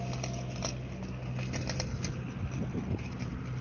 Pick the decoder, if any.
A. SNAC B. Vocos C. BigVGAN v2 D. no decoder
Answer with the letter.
D